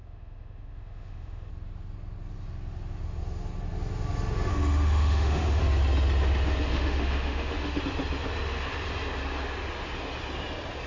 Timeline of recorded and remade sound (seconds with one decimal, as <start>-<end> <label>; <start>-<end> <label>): 0.0-1.5 remade; 1.5-4.5 recorded; 4.5-5.6 remade; 5.6-6.7 recorded; 6.7-7.8 remade; 7.8-10.9 recorded